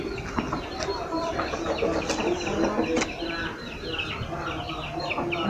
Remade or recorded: recorded